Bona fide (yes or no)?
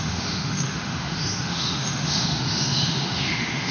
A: no